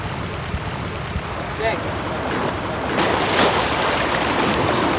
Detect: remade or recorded recorded